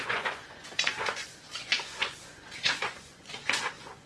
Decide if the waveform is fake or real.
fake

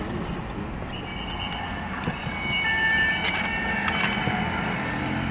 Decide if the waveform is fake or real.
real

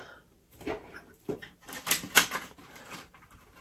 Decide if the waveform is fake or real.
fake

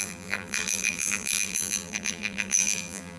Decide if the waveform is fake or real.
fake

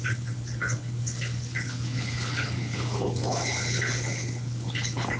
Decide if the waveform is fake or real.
fake